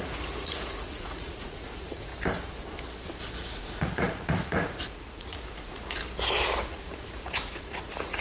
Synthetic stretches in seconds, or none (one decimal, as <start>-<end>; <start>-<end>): 0.0-2.1; 3.4-6.0; 6.6-8.2